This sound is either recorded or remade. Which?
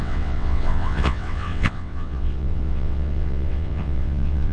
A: remade